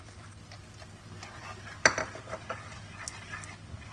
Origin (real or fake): real